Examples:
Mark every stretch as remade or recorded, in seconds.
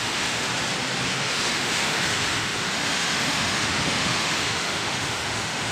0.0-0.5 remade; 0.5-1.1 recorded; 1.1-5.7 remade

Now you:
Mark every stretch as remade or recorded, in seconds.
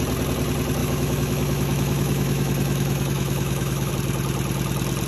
0.0-0.8 recorded; 0.8-3.9 remade; 3.9-5.1 recorded